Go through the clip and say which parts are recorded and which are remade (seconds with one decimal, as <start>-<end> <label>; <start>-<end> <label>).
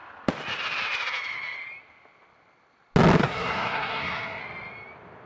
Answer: 0.0-3.2 recorded; 3.2-4.4 remade; 4.4-5.3 recorded